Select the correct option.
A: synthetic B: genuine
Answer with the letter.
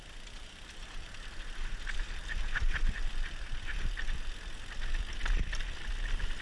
B